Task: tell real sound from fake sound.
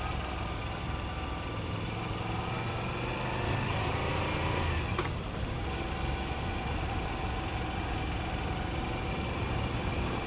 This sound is real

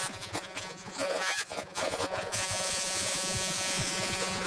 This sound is fake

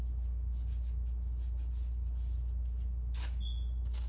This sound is real